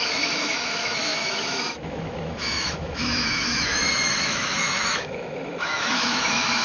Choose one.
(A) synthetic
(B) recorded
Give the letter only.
A